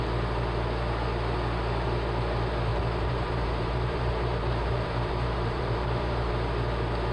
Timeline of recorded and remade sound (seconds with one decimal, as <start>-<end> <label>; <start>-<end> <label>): 0.0-2.7 recorded; 2.7-6.3 remade; 6.3-7.1 recorded